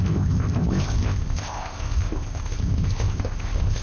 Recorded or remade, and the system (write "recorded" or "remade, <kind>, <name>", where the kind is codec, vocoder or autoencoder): remade, codec, ZipCodec